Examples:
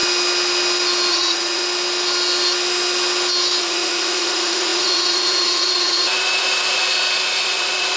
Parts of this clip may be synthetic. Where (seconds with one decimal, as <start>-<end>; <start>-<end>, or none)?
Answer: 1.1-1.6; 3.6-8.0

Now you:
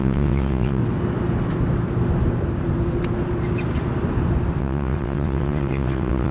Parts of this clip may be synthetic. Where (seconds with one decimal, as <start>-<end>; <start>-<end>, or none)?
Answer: 0.0-0.8; 4.6-6.3

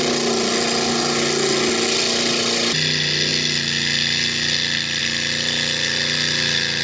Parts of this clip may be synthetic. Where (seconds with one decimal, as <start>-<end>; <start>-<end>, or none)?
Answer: none

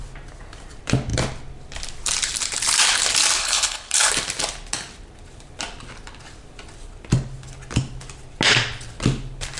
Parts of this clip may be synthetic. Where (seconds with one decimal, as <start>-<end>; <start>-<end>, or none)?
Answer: 3.4-4.1

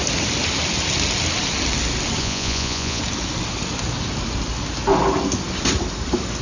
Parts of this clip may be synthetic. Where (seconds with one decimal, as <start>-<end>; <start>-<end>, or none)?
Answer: 2.2-3.0

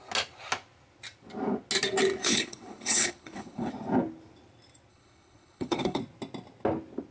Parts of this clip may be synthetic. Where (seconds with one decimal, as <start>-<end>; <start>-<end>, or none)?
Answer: 2.2-3.7; 4.9-6.0

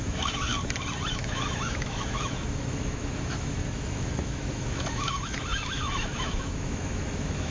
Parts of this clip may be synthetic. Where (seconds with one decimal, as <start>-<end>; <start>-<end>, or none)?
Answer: 0.0-0.5; 1.1-7.5

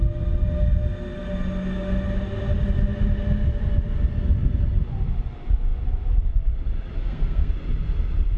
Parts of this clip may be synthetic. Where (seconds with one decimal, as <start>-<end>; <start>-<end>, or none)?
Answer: 7.0-7.5